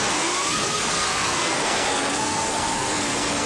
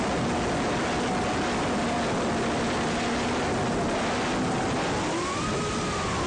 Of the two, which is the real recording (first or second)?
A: second